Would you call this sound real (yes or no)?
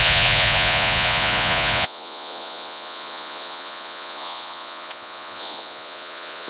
no